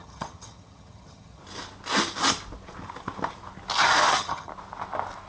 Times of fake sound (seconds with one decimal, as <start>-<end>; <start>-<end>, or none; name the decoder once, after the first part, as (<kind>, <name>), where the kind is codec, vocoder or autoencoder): 0.0-1.4 (vocoder, HiFi-GAN); 4.1-4.5